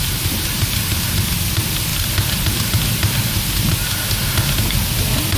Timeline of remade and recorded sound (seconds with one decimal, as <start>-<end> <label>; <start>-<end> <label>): 0.0-5.4 recorded